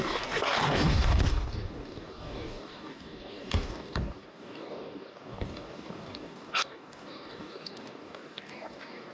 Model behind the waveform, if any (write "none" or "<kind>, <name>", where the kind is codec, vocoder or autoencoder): codec, DAC